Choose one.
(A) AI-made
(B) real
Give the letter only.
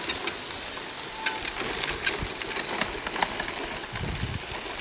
B